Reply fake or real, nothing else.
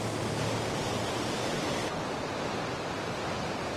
real